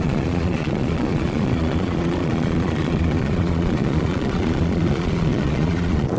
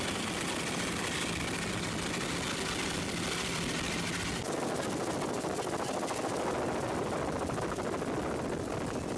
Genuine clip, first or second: second